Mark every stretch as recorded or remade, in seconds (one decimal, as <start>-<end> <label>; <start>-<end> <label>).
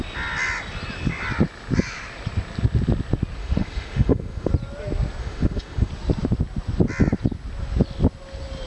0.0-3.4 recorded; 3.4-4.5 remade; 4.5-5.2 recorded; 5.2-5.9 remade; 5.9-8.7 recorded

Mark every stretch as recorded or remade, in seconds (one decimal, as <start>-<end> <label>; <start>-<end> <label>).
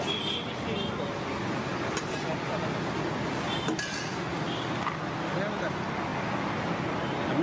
0.0-7.4 recorded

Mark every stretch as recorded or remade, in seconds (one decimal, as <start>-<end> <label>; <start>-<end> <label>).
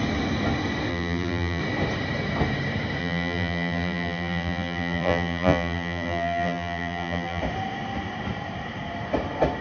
0.0-0.9 recorded; 0.9-1.6 remade; 1.6-3.0 recorded; 3.0-7.4 remade; 7.4-9.6 recorded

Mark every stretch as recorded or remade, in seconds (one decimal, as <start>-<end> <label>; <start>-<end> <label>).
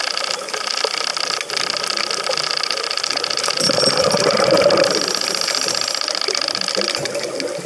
0.0-7.7 recorded